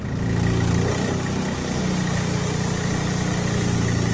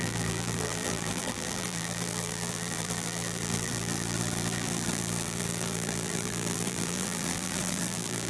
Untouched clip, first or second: first